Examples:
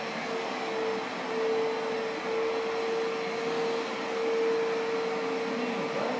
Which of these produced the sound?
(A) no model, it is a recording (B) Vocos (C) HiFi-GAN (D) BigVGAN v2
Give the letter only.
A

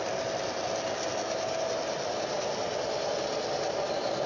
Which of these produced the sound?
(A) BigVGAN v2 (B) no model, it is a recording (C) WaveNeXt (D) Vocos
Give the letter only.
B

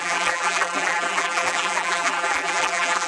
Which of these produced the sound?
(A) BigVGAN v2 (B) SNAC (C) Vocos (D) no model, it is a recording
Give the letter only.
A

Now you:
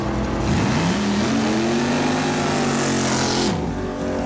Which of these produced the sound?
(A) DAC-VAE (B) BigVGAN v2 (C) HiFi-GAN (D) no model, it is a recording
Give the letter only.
D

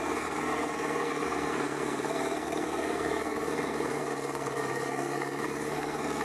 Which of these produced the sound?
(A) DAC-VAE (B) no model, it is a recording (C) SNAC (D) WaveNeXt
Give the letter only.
C